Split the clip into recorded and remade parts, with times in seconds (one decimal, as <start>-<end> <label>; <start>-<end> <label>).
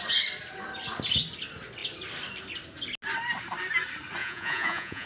0.0-4.2 recorded; 4.2-5.1 remade